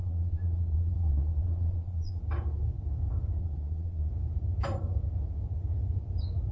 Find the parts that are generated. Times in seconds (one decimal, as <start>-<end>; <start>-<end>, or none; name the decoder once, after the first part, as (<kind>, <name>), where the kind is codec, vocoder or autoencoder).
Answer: 0.0-2.2 (vocoder, Vocos); 3.4-4.1